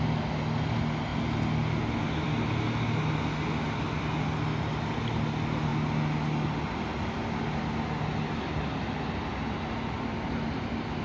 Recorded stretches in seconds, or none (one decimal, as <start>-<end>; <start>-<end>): 0.0-11.0